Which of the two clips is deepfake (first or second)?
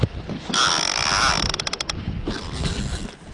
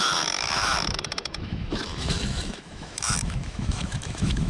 second